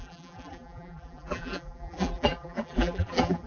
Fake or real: fake